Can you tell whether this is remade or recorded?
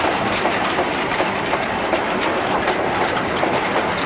remade